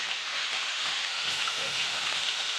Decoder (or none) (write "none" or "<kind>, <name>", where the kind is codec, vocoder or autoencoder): autoencoder, DAC-VAE